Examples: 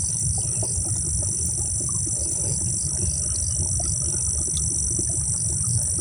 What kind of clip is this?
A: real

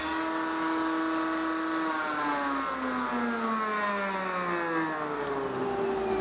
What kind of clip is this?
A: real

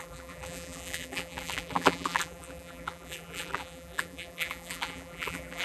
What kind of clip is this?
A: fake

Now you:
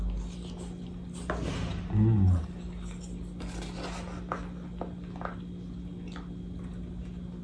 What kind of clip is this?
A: real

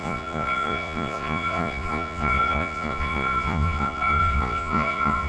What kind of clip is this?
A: fake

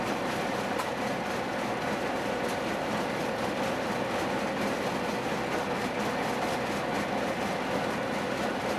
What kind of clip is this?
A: real